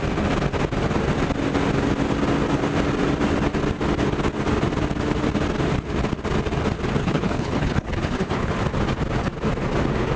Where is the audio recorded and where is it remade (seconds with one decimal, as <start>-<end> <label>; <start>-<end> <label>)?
0.0-7.0 recorded; 7.0-8.5 remade; 8.5-10.2 recorded